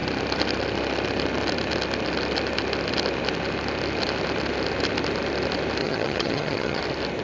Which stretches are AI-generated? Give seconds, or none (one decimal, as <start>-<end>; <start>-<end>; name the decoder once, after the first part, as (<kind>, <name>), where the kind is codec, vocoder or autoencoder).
5.8-6.8 (vocoder, HiFi-GAN)